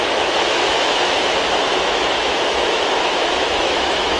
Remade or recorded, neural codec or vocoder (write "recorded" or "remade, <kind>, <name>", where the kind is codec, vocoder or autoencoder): remade, autoencoder, DAC-VAE